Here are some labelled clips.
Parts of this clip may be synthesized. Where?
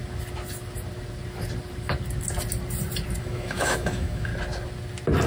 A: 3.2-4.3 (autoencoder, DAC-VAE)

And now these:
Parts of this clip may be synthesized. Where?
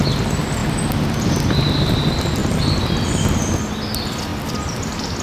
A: none